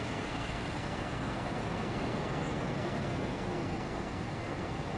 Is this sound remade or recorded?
remade